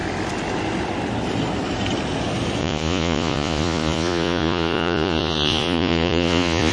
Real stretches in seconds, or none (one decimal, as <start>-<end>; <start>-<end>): 0.0-2.6